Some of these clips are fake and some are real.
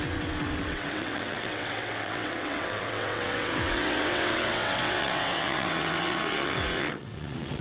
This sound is fake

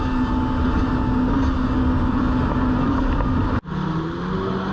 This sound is real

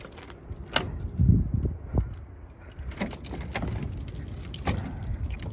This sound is real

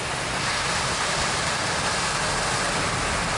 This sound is real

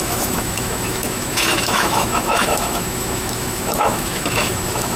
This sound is fake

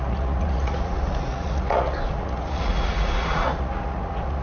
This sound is fake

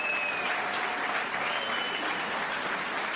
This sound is real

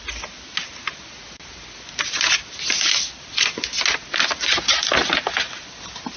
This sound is real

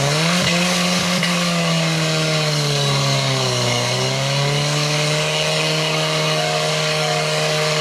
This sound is fake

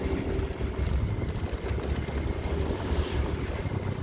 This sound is real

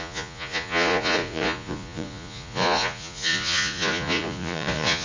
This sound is fake